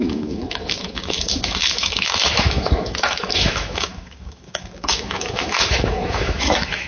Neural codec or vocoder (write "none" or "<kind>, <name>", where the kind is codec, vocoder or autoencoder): autoencoder, DAC-VAE